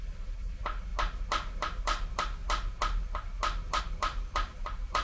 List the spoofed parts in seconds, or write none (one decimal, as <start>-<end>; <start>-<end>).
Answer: 0.0-0.9; 1.8-2.4; 3.8-5.0